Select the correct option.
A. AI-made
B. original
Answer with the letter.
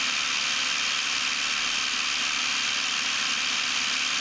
B